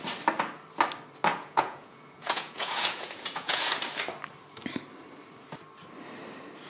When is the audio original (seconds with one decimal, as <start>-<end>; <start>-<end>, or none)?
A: 0.0-1.3; 3.8-6.7